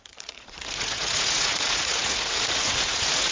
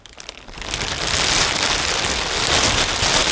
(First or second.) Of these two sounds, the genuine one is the second